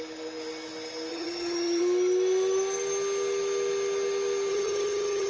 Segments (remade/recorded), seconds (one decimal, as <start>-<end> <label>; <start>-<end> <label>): 0.0-1.1 recorded; 1.1-1.8 remade; 1.8-4.5 recorded; 4.5-5.3 remade

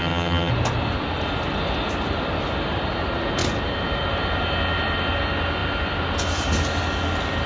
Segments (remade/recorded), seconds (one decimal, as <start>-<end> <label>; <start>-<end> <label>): 0.0-0.5 remade; 0.5-7.5 recorded